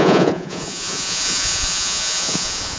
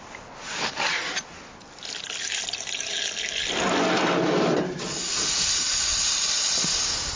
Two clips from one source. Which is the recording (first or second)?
second